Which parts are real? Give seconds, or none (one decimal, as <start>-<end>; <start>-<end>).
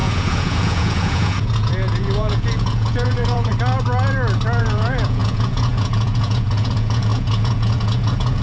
3.5-4.6